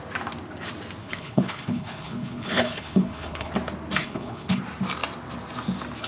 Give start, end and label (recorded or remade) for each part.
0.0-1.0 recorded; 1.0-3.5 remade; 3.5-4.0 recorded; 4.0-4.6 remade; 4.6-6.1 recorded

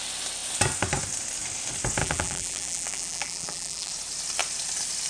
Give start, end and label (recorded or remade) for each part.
0.0-2.0 recorded; 2.0-3.9 remade; 3.9-5.1 recorded

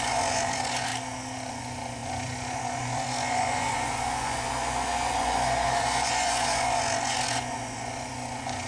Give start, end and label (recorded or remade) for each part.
0.0-0.9 remade; 0.9-1.5 recorded; 1.5-8.7 remade

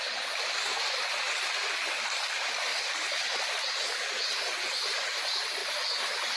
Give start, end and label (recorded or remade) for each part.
0.0-2.7 recorded; 2.7-3.4 remade; 3.4-6.4 recorded

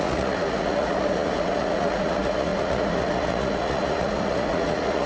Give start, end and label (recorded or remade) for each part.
0.0-5.1 remade

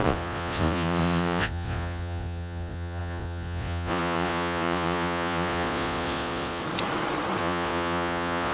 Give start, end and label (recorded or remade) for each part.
0.0-6.6 remade; 6.6-7.4 recorded; 7.4-8.5 remade

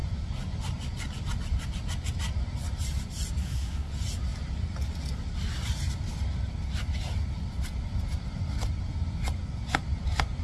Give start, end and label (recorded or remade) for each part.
0.0-3.4 recorded; 3.4-3.9 remade; 3.9-10.4 recorded

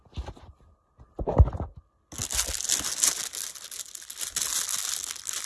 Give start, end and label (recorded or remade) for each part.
0.0-5.5 recorded